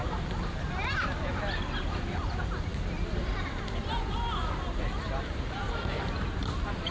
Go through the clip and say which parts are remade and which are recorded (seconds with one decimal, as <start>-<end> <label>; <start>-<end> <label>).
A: 0.0-6.9 recorded